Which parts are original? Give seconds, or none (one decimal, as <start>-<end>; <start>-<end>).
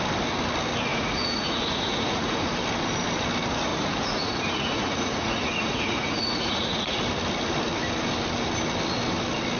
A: 0.0-0.9; 2.5-3.7; 7.0-9.6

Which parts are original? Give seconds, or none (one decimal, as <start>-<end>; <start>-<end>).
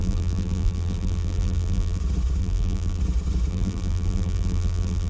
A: 2.0-2.4; 3.0-3.5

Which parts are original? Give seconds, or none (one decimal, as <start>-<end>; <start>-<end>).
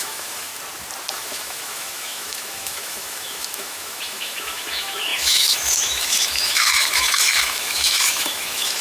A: 0.5-1.1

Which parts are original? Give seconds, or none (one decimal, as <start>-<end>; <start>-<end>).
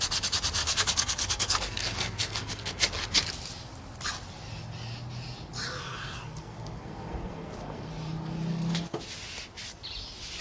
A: 0.0-0.6; 2.8-5.8; 7.9-8.5; 9.0-10.4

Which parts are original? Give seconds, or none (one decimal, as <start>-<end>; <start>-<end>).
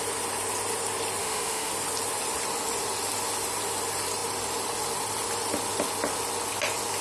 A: 0.0-1.2; 1.7-7.0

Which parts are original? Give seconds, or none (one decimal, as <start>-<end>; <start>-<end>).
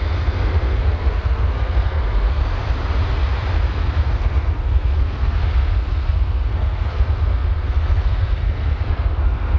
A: 2.4-3.7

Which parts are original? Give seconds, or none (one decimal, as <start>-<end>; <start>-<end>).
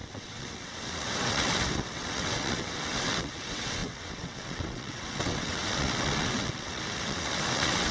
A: none